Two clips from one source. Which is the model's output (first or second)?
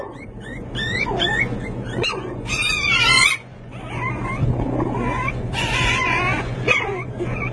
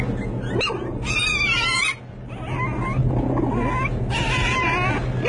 first